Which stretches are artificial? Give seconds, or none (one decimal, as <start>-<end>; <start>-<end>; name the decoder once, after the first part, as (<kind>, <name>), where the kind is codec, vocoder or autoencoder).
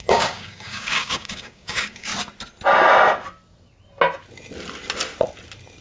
0.0-2.1 (codec, DAC)